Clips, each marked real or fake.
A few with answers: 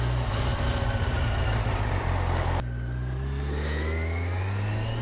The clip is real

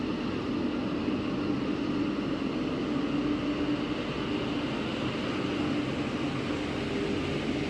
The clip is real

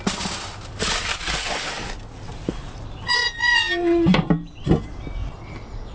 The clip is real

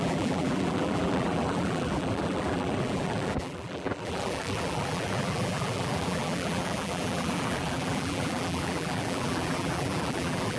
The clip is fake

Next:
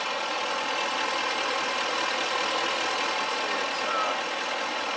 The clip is real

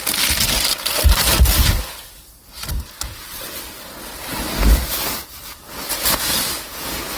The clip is fake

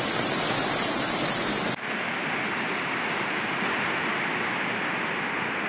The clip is real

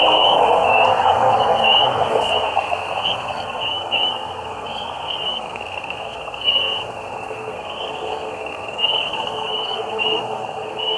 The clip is fake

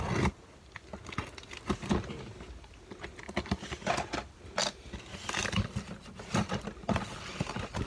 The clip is real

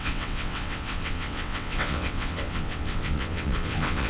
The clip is fake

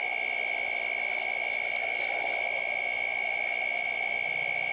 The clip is real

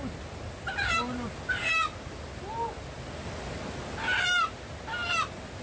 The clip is real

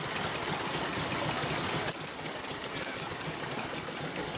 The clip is real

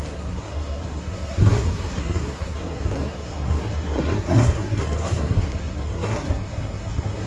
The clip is fake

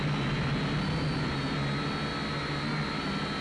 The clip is real